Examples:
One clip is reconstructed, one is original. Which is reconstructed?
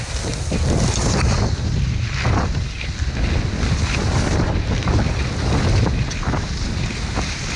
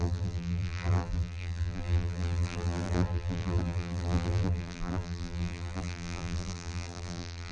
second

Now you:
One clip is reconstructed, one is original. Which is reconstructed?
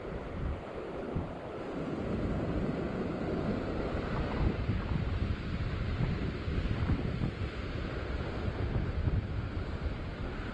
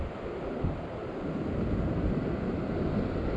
first